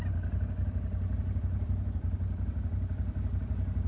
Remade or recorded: recorded